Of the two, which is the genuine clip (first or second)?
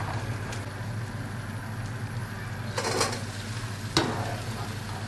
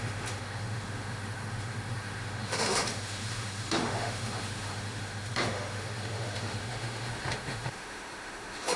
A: first